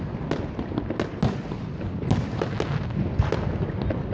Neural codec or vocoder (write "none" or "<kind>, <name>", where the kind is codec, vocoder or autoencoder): none